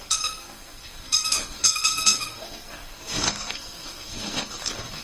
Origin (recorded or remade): remade